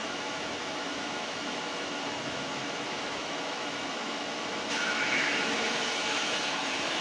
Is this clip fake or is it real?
fake